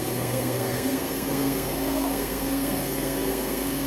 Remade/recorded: remade